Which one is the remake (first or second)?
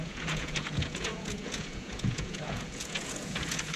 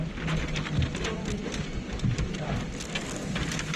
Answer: first